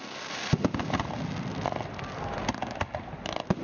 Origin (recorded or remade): recorded